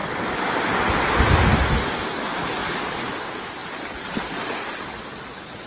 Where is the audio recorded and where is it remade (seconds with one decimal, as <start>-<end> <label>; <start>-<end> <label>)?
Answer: 0.0-2.6 recorded; 2.6-3.2 remade; 3.2-5.7 recorded